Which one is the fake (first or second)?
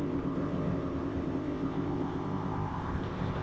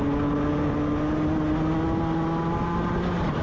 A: first